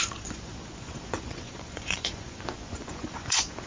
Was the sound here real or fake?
fake